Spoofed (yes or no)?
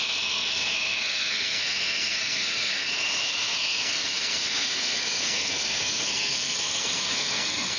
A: yes